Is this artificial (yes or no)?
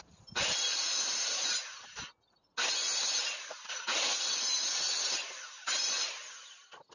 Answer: no